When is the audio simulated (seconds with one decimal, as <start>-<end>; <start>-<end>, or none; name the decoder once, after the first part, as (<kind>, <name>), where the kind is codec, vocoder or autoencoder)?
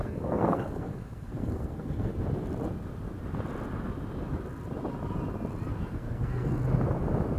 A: 0.0-2.1 (codec, SNAC); 5.7-6.6